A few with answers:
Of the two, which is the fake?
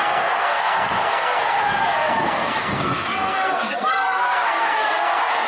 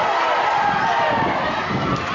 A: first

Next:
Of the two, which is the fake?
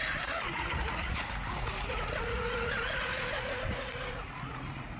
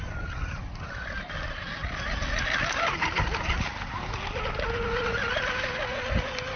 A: first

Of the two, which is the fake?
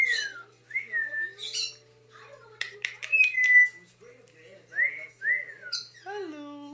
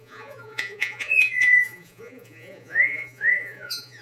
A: second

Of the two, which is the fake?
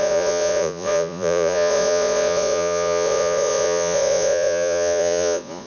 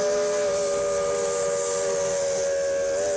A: first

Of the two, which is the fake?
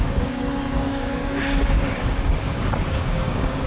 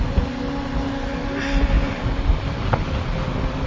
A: first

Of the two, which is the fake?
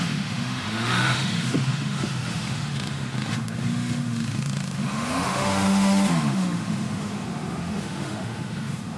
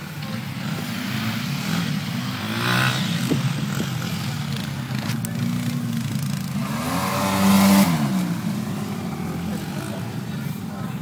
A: first